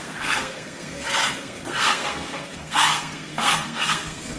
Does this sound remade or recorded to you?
remade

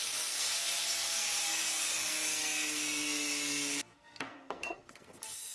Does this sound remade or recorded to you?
remade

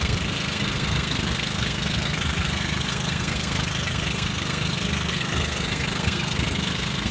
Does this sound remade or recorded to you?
remade